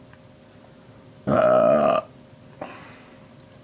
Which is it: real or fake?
real